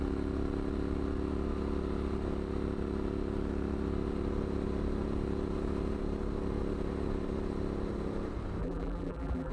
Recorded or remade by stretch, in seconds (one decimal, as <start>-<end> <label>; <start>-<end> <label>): 0.0-8.6 recorded; 8.6-9.5 remade